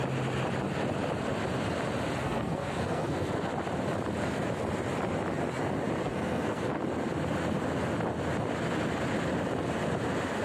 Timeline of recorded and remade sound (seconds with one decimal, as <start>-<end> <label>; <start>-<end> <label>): 0.0-2.2 recorded; 2.2-3.5 remade; 3.5-6.0 recorded; 6.0-6.8 remade; 6.8-10.4 recorded